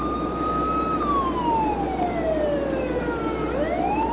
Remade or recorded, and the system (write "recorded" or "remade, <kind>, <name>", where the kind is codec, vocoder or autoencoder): recorded